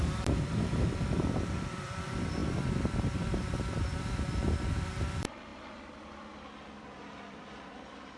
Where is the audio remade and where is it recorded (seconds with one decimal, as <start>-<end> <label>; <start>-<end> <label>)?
0.0-8.2 remade